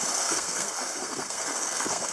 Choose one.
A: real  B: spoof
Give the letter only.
B